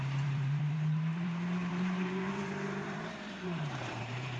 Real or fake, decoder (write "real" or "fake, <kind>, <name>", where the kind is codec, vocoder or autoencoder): fake, vocoder, BigVGAN v2